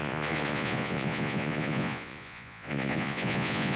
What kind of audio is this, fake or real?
fake